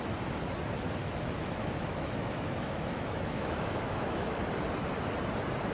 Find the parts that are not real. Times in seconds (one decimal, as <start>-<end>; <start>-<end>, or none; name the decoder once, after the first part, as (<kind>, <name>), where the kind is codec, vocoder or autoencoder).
1.0-4.4 (autoencoder, DAC-VAE)